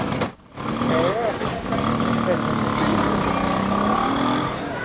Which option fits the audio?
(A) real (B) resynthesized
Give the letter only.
A